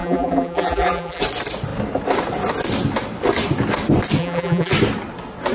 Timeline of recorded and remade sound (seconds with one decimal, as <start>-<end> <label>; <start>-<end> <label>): 0.0-1.2 remade; 1.2-4.2 recorded; 4.2-4.7 remade; 4.7-5.5 recorded